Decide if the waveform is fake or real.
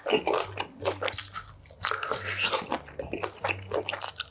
real